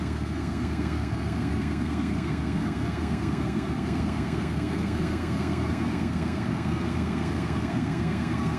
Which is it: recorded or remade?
remade